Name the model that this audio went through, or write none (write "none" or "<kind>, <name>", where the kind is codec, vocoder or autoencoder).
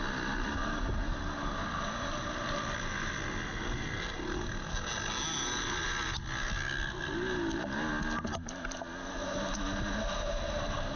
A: none